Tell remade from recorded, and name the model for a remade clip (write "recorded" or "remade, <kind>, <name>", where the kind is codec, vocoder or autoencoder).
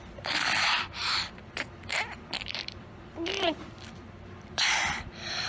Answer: remade, vocoder, BigVGAN v2